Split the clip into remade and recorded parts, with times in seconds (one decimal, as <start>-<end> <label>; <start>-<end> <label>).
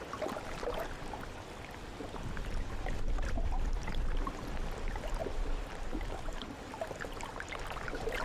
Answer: 0.0-8.2 recorded